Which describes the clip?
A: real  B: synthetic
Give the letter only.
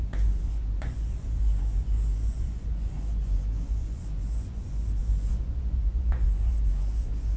B